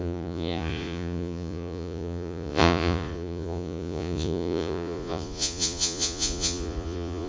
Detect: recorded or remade remade